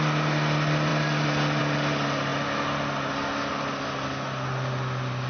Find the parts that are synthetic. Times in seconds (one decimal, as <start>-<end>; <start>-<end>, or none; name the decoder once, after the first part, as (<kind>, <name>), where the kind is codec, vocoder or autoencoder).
none